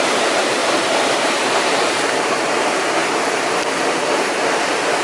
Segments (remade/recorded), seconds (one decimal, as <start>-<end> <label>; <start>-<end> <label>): 0.0-5.0 remade